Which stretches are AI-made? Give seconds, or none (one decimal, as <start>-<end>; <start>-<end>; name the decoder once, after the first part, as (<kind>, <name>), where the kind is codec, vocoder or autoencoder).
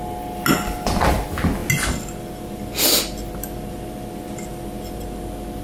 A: none